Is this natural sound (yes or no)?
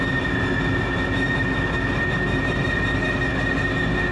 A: yes